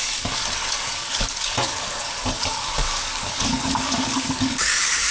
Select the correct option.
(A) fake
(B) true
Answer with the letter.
A